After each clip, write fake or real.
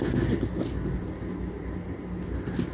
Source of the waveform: real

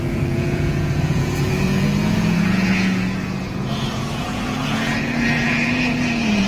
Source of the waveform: fake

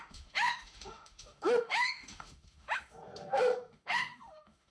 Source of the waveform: fake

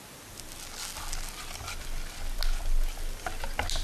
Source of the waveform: real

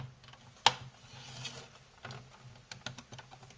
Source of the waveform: real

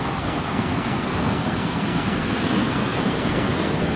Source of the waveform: fake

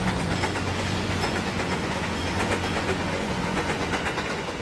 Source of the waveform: fake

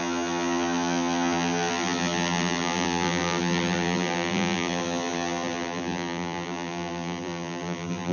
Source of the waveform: fake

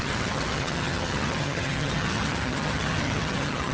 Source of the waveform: fake